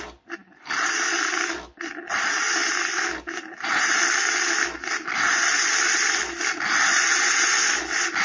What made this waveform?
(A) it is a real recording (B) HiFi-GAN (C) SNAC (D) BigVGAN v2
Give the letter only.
A